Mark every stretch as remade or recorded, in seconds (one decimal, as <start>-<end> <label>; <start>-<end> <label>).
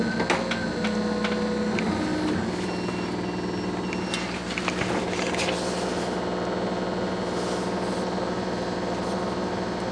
0.0-9.9 recorded